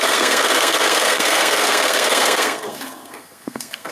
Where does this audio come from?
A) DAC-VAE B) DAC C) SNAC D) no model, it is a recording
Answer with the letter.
C